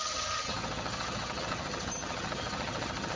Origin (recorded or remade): remade